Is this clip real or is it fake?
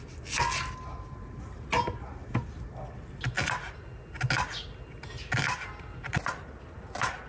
real